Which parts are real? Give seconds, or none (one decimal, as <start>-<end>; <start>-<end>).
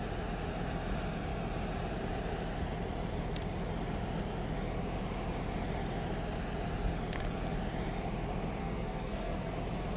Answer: 0.0-8.6; 9.5-10.0